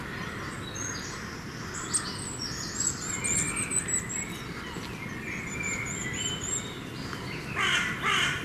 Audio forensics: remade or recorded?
recorded